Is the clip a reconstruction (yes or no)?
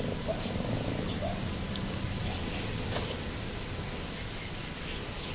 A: no